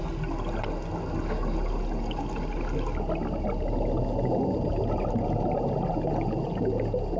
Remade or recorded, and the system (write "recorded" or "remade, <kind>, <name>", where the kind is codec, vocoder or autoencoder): recorded